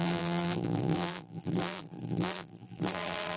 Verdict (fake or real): fake